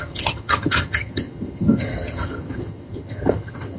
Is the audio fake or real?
fake